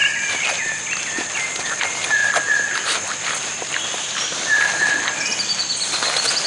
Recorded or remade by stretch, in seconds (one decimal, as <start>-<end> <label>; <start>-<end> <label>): 0.0-6.5 recorded